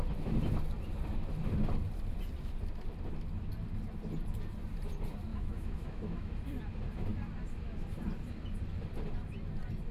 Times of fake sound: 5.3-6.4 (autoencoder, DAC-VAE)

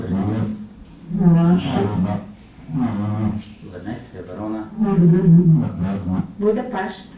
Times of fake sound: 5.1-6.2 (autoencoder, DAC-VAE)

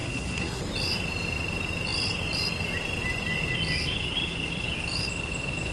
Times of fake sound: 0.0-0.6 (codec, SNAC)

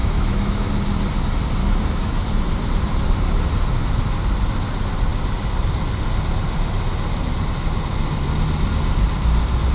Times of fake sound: 0.0-0.7 (autoencoder, DAC-VAE); 1.6-2.4